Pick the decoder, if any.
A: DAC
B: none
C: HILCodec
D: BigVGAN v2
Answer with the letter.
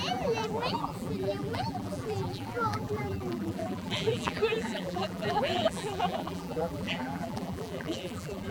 D